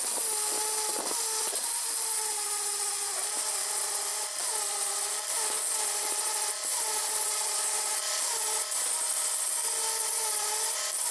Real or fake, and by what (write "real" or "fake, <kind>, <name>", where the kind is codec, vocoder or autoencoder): real